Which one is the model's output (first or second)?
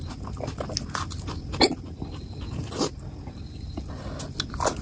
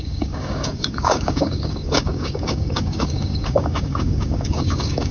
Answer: second